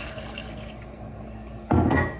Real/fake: fake